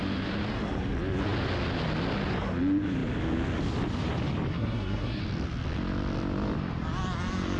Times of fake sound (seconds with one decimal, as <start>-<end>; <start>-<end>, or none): 4.5-5.2